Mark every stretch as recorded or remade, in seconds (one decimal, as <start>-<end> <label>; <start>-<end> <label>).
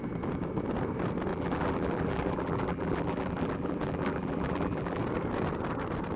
0.0-1.3 recorded; 1.3-5.0 remade; 5.0-6.2 recorded